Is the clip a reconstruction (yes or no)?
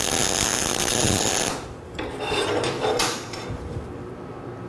no